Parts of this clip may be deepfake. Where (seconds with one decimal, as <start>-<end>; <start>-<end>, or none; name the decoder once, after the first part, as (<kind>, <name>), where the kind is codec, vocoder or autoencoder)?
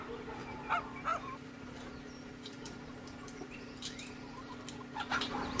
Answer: 1.1-4.5 (vocoder, BigVGAN v2); 5.1-5.6